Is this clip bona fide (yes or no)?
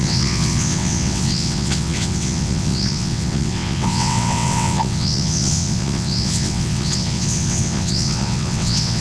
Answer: no